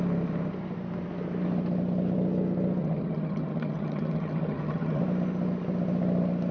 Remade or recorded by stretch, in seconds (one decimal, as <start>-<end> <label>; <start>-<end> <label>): 0.0-2.8 recorded; 2.8-5.0 remade; 5.0-6.5 recorded